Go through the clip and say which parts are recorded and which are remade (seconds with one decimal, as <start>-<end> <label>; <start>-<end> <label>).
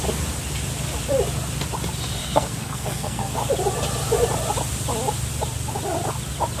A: 0.0-2.2 recorded; 2.2-3.5 remade; 3.5-6.6 recorded